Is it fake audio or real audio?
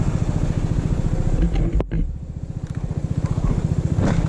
real